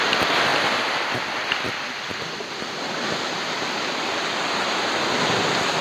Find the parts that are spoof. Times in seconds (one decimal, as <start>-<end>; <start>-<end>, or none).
0.0-5.8

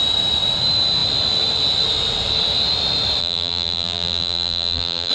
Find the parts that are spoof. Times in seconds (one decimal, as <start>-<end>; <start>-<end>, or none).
3.2-5.1

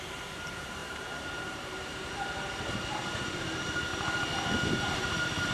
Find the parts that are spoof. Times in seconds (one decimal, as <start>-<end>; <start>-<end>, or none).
0.0-3.9; 4.7-5.5

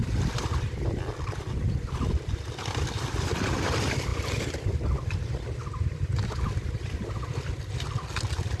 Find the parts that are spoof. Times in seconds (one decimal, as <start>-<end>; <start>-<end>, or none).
none

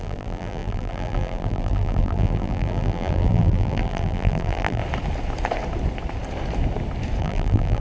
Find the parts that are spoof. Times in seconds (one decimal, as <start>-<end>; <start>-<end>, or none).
0.0-4.8; 7.2-7.8

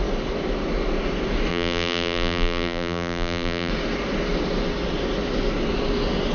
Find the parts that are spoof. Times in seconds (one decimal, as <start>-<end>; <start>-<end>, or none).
1.5-3.7

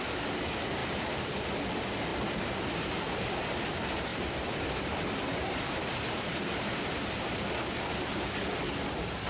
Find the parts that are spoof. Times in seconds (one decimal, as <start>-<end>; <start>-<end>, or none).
0.8-1.5; 2.1-3.6; 4.1-7.3